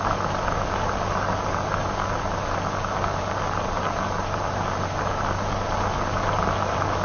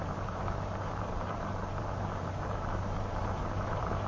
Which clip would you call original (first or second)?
first